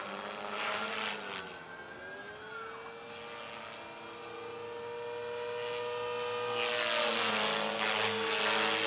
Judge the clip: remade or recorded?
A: recorded